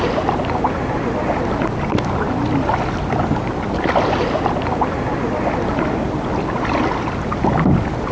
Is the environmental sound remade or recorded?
recorded